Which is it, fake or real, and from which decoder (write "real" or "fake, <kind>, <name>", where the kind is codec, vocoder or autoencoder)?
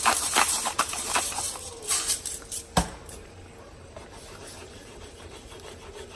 fake, vocoder, BigVGAN v2